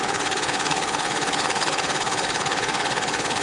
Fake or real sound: fake